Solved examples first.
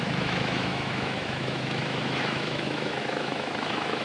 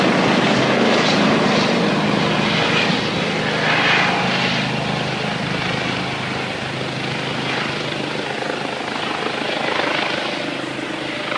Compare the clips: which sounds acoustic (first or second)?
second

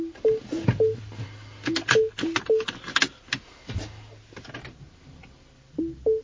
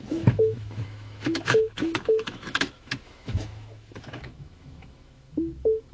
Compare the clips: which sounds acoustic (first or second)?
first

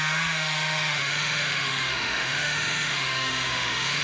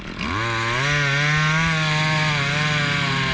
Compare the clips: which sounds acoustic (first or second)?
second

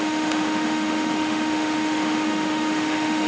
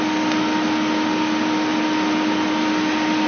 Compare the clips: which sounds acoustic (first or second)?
second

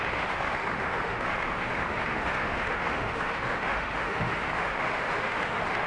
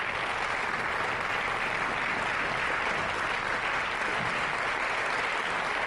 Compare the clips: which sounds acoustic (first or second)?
second